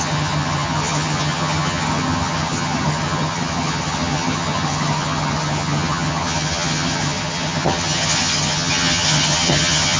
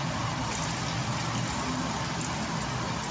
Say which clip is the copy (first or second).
first